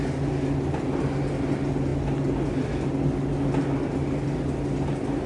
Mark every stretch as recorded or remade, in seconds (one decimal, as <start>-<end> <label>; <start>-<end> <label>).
0.0-5.3 recorded